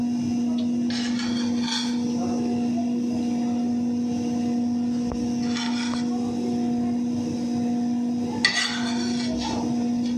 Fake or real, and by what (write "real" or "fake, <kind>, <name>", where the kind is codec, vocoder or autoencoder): real